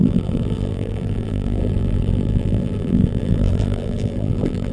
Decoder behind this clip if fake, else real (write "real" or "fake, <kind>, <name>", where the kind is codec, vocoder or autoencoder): fake, vocoder, BigVGAN v2